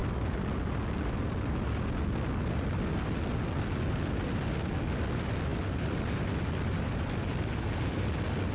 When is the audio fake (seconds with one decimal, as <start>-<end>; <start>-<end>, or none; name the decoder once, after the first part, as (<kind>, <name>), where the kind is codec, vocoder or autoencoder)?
5.5-8.5 (vocoder, BigVGAN v2)